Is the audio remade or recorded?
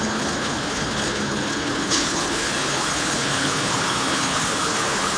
remade